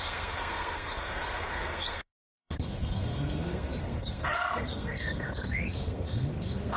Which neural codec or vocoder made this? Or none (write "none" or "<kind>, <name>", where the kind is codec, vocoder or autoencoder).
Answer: codec, SNAC